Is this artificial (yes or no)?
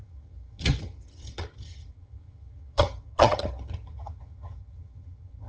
yes